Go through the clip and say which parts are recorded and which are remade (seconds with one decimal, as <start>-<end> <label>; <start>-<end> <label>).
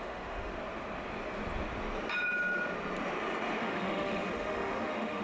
0.0-0.5 remade; 0.5-3.6 recorded; 3.6-5.2 remade